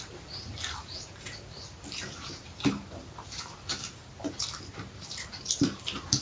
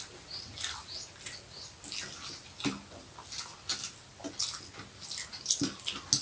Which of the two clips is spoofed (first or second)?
first